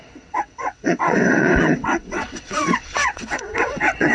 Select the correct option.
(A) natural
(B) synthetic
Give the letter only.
B